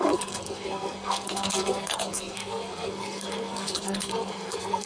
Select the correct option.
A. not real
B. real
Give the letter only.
A